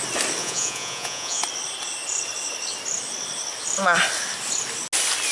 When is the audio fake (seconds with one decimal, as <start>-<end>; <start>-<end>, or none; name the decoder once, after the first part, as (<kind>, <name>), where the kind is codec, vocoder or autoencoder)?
0.4-1.4 (vocoder, Vocos)